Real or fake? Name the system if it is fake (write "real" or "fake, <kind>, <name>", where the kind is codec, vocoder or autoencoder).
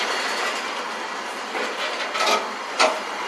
real